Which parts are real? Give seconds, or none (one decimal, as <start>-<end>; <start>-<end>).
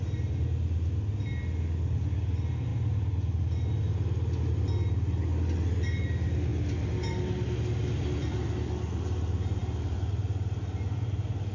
0.0-11.5